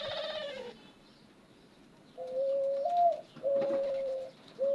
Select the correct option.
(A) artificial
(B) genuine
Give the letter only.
A